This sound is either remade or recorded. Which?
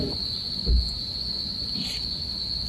remade